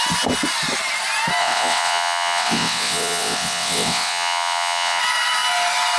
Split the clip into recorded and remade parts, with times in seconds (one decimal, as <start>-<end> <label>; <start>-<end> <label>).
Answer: 0.0-1.4 recorded; 1.4-5.0 remade; 5.0-6.0 recorded